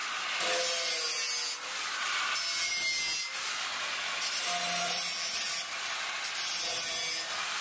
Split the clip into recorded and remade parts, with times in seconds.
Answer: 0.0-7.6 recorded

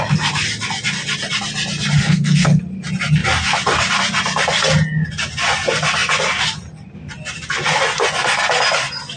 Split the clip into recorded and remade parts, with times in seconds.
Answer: 0.0-2.0 recorded; 2.0-2.6 remade; 2.6-9.2 recorded

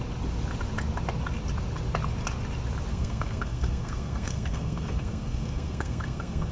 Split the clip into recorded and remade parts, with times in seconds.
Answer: 0.0-2.9 recorded; 2.9-6.5 remade

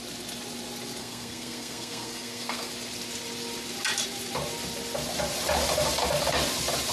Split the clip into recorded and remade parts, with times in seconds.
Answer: 0.0-1.0 recorded; 1.0-2.7 remade; 2.7-6.9 recorded

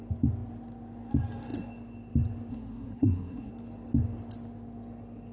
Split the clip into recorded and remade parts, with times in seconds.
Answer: 0.0-2.5 recorded; 2.5-3.5 remade; 3.5-5.3 recorded

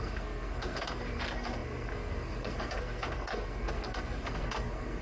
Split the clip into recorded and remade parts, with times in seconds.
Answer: 0.0-5.0 remade

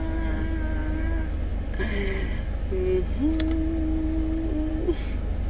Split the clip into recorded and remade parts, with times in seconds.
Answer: 0.0-5.5 recorded

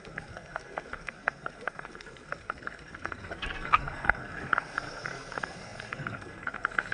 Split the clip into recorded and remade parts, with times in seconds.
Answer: 0.0-6.9 remade